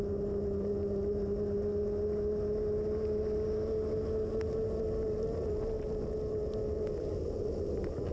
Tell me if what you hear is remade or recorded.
recorded